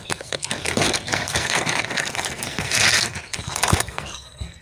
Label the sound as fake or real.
fake